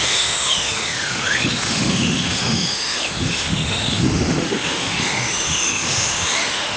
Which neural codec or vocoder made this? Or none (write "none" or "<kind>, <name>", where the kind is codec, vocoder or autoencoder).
autoencoder, DAC-VAE